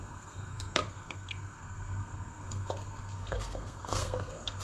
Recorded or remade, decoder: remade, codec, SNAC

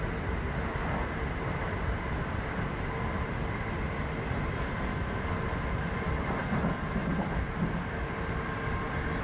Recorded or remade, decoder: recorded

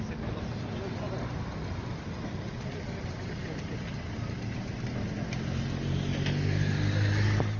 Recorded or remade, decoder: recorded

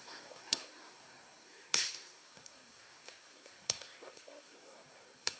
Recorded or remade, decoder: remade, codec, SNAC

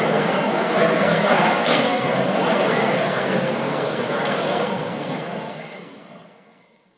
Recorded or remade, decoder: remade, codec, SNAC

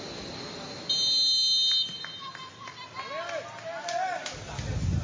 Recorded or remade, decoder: recorded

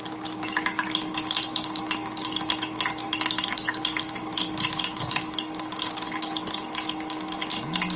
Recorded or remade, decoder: remade, codec, DAC